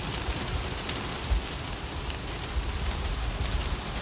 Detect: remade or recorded recorded